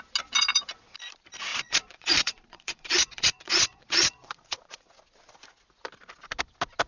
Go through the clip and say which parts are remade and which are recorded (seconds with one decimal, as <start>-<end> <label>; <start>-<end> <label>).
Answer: 0.0-1.5 recorded; 1.5-4.9 remade; 4.9-6.9 recorded